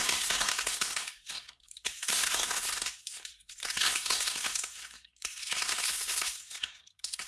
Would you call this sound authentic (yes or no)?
no